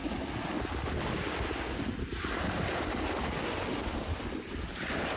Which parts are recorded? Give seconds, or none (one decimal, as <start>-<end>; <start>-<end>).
0.0-5.2